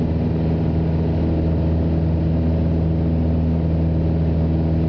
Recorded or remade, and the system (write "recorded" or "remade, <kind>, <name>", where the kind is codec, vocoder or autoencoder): recorded